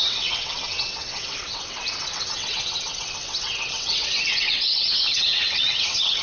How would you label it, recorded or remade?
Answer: remade